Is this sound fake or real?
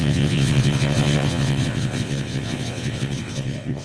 fake